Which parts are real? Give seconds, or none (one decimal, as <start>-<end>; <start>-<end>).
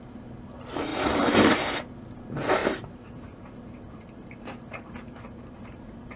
0.0-0.9; 1.9-2.6